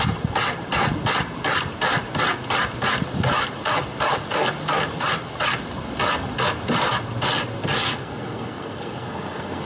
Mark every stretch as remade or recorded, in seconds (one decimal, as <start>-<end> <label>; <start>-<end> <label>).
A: 0.0-8.0 recorded; 8.0-9.6 remade